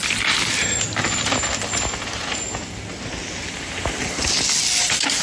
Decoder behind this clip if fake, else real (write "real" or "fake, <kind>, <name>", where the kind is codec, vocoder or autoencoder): real